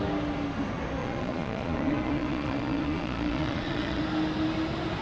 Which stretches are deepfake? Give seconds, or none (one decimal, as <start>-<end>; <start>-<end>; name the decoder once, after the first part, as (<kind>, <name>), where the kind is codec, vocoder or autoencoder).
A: 1.0-4.0 (vocoder, Vocos)